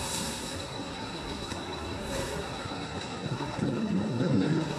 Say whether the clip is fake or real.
fake